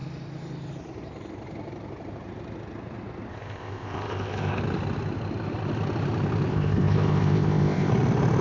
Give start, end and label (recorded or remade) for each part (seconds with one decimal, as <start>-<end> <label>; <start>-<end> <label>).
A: 0.0-3.3 recorded; 3.3-4.6 remade; 4.6-6.5 recorded; 6.5-7.9 remade; 7.9-8.4 recorded